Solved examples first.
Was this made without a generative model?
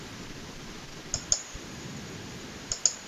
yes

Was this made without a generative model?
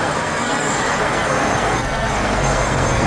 no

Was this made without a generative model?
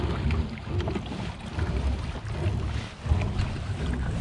yes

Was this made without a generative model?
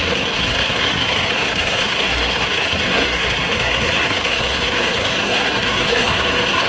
no